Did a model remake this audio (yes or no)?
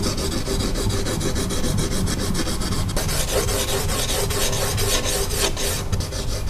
no